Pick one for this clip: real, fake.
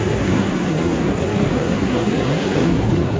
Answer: fake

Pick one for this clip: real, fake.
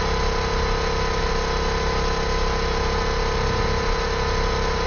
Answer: real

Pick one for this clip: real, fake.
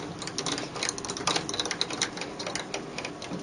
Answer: real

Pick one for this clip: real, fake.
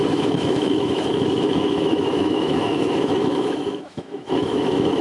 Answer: fake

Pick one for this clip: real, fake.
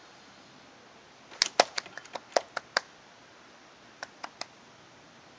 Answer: real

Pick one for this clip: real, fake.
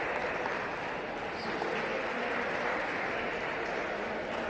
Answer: real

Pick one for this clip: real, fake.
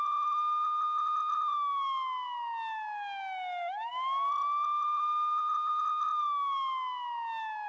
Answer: real